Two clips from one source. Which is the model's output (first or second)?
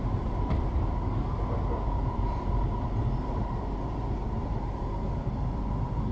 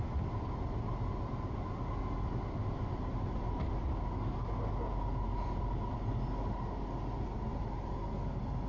first